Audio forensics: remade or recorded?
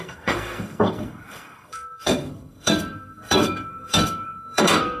remade